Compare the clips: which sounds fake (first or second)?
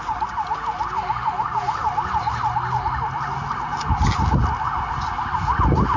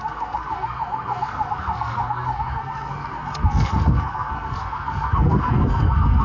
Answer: second